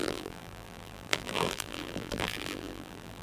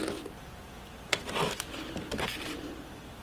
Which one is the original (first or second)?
second